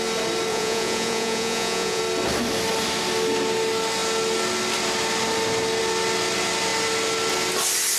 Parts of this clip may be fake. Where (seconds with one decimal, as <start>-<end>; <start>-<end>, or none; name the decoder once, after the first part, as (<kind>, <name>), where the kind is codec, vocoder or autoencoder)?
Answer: 0.5-2.0 (vocoder, Vocos)